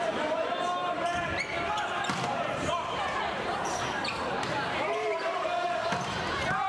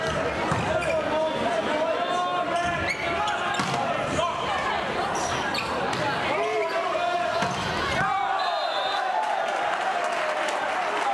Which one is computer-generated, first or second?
first